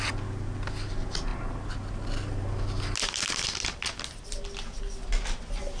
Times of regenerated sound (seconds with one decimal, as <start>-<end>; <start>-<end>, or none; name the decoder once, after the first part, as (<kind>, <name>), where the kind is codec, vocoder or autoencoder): none